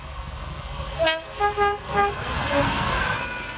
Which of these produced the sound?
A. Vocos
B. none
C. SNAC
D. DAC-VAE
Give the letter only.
C